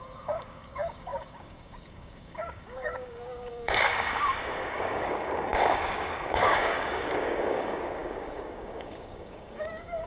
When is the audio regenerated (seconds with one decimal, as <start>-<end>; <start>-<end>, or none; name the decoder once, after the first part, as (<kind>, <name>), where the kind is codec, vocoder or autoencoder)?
0.0-10.1 (codec, DAC)